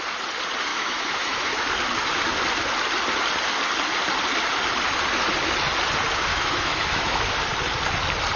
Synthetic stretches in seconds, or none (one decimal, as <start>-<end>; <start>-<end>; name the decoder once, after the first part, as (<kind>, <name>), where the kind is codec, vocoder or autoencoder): 0.7-1.7 (autoencoder, DAC-VAE); 6.3-7.2